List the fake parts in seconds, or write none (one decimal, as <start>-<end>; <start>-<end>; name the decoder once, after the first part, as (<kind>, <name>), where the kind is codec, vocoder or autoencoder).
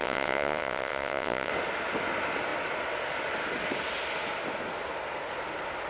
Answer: 0.0-1.5 (vocoder, WaveNeXt)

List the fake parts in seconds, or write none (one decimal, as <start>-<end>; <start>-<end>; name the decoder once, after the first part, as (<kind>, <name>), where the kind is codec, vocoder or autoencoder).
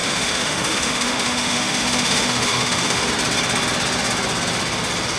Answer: 0.0-3.1 (autoencoder, DAC-VAE)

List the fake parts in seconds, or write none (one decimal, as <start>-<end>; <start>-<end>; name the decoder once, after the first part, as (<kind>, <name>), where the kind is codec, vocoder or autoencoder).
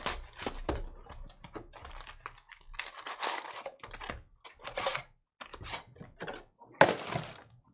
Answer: none